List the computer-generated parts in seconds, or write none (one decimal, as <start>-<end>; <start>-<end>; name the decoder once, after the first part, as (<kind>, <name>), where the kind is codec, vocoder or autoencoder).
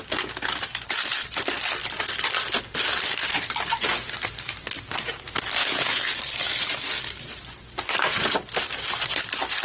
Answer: 5.6-6.1 (vocoder, Vocos)